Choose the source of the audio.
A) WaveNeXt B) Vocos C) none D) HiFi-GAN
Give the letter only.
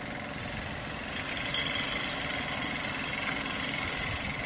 C